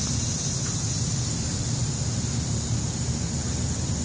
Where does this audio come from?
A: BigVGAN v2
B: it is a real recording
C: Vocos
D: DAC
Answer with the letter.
B